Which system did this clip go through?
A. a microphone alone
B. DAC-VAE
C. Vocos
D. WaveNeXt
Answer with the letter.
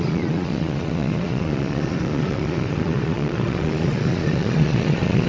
C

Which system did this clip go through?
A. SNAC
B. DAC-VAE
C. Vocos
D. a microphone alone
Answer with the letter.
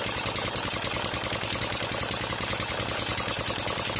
D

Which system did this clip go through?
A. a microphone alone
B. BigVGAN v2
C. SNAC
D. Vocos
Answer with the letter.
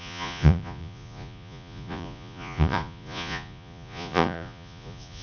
D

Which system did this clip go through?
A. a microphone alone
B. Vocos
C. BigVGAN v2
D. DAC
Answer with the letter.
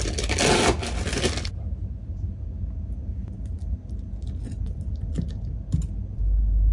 A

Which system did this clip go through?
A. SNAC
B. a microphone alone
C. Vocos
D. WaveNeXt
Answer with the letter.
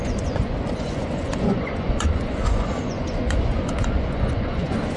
C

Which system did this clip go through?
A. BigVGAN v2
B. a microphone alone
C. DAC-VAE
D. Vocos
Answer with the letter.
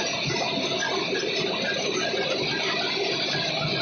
B